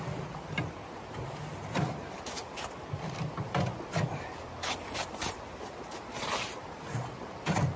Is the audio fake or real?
real